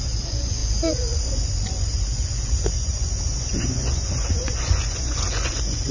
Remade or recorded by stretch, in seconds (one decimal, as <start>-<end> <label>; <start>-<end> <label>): 0.0-5.9 remade